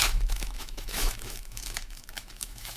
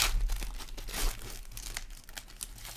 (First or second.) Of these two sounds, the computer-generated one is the first